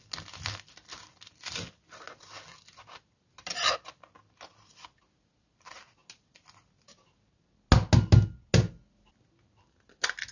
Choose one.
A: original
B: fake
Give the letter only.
A